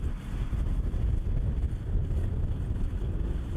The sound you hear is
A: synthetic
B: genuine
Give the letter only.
B